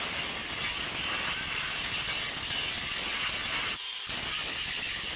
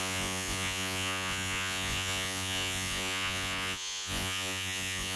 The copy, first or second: second